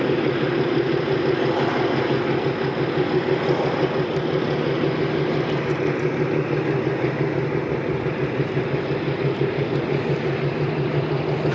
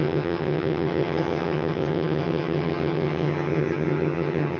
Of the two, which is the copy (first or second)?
second